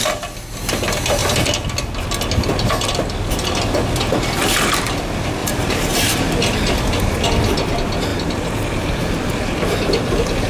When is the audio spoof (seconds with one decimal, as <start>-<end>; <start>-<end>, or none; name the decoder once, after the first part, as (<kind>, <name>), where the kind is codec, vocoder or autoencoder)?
5.4-6.2 (vocoder, BigVGAN v2); 8.1-9.0

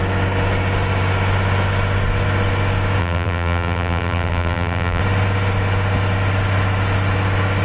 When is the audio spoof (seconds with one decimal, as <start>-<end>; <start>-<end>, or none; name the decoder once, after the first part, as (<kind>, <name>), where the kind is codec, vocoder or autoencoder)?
3.0-5.0 (vocoder, BigVGAN v2)

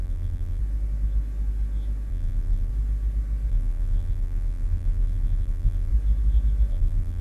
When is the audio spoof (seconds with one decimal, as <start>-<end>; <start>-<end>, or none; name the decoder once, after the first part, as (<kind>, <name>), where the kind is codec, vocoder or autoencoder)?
0.0-0.6 (vocoder, BigVGAN v2); 2.1-2.7; 3.5-5.9; 6.7-7.2

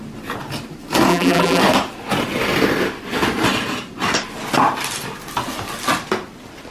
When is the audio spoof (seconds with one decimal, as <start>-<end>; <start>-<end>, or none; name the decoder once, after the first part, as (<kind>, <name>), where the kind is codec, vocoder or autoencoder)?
1.1-1.6 (vocoder, BigVGAN v2)

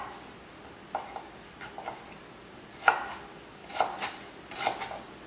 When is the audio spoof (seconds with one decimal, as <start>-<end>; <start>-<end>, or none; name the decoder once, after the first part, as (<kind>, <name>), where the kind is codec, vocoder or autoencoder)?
3.6-4.8 (vocoder, BigVGAN v2)

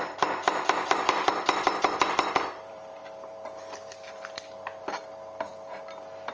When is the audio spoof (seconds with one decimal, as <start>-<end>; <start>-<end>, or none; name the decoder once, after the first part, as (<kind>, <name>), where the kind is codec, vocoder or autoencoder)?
0.0-5.5 (vocoder, BigVGAN v2)

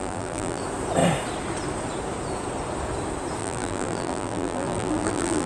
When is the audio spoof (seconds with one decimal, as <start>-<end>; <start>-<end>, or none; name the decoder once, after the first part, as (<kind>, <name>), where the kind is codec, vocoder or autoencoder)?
0.0-0.6 (vocoder, BigVGAN v2); 3.4-5.5